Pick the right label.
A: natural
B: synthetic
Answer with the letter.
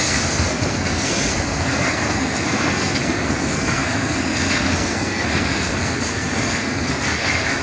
B